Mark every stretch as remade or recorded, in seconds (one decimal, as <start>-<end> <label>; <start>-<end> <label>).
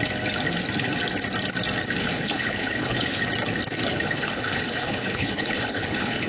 0.0-2.0 recorded; 2.0-3.2 remade; 3.2-3.9 recorded; 3.9-6.3 remade